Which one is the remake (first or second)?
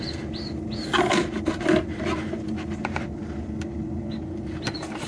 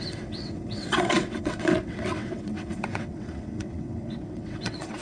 second